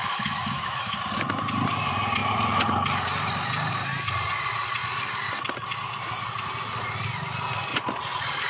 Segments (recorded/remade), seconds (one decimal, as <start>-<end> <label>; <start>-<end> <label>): 0.0-1.0 remade; 1.0-8.5 recorded